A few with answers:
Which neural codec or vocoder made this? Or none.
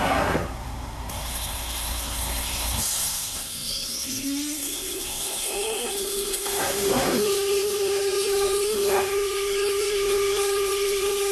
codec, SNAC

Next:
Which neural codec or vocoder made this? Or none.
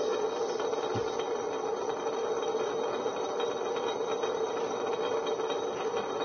none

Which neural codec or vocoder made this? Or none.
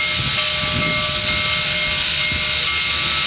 none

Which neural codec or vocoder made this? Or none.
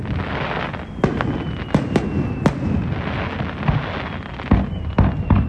none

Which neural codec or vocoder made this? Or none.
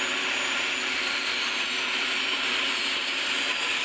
vocoder, BigVGAN v2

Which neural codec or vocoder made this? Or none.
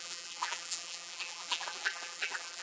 vocoder, BigVGAN v2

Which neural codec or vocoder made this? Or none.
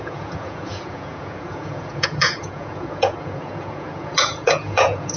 vocoder, Vocos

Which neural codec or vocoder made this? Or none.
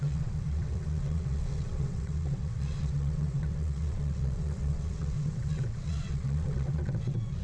vocoder, WaveNeXt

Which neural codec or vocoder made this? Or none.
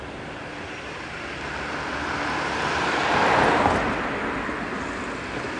none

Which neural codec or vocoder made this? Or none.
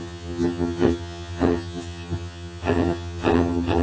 vocoder, HiFi-GAN